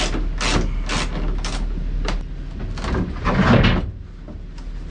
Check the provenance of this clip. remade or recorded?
recorded